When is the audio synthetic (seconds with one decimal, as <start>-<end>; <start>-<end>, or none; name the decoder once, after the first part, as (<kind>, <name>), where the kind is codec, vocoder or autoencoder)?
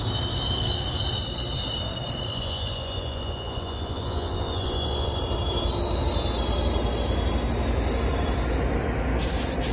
2.3-5.2 (vocoder, Vocos)